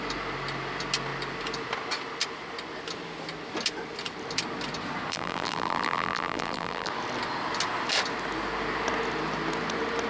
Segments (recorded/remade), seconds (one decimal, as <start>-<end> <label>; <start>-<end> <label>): 0.0-5.1 recorded; 5.1-6.9 remade; 6.9-10.1 recorded